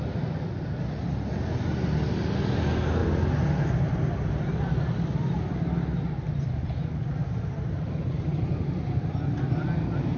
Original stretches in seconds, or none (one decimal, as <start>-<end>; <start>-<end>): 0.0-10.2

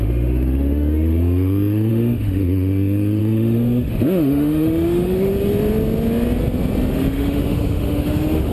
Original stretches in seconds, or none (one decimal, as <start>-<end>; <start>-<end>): 5.3-6.9

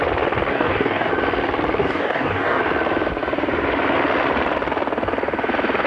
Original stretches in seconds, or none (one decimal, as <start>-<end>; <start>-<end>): 0.0-0.5; 1.1-1.8; 2.6-5.9

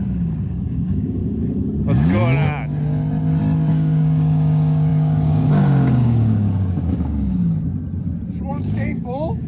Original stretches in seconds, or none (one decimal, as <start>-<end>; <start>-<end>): 1.2-3.7; 7.7-8.5